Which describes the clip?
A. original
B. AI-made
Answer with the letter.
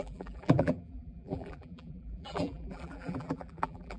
B